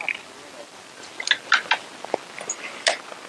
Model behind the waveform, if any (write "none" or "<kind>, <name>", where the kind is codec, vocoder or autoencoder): none